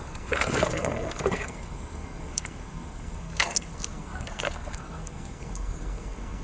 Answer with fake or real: fake